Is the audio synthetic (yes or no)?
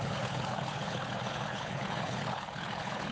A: yes